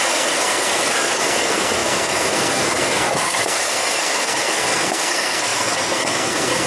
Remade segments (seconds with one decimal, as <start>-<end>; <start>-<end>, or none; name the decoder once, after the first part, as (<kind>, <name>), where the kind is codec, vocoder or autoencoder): 0.0-6.7 (codec, SNAC)

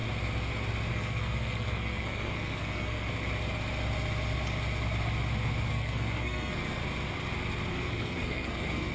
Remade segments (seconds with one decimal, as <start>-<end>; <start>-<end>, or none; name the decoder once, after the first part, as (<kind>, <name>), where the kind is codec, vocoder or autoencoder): 0.9-3.1 (codec, SNAC); 5.7-6.8; 7.7-8.9